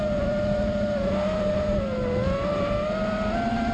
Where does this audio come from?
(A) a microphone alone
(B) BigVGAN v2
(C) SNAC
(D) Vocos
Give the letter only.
A